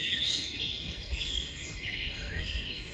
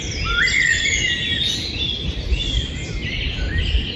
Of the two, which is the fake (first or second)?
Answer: first